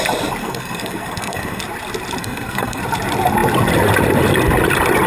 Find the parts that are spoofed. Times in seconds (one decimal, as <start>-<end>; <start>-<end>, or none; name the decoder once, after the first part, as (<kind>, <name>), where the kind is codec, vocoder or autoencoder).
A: 0.4-1.6 (codec, SNAC); 2.2-2.8